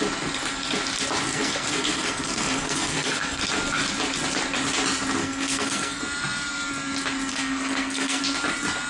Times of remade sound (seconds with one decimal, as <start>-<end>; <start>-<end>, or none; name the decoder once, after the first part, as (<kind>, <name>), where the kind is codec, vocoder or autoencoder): 1.3-3.4 (codec, SNAC); 5.2-6.0; 7.3-8.2